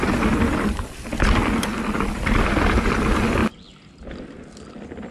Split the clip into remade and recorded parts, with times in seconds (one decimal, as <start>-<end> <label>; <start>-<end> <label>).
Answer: 0.0-5.1 recorded